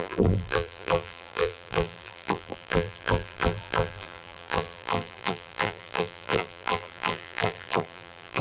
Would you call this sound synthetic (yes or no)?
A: yes